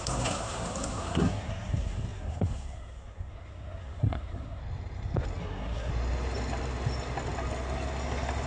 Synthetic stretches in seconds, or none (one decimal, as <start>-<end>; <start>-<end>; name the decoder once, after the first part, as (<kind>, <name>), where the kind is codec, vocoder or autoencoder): 0.0-4.6 (codec, SNAC); 5.4-5.9